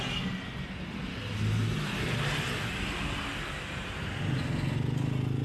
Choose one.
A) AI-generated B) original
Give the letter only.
B